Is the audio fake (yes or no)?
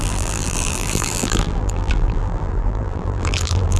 yes